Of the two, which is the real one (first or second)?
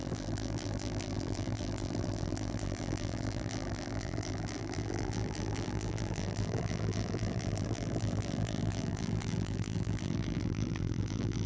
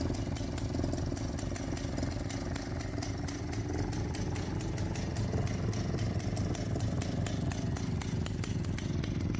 second